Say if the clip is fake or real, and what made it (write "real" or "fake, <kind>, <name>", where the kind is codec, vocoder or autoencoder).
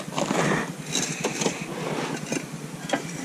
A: real